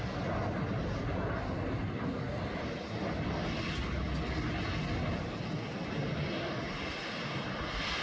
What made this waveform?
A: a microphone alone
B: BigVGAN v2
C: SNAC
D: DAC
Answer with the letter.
A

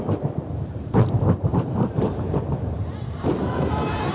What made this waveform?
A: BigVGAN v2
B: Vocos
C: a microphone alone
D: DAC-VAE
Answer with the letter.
A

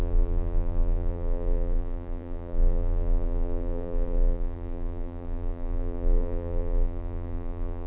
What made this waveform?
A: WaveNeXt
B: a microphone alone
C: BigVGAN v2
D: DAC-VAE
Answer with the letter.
C